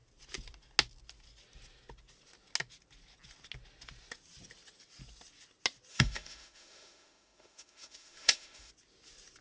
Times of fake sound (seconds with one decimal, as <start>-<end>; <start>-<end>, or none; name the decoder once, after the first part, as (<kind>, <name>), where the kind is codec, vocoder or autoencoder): 5.9-8.7 (autoencoder, DAC-VAE)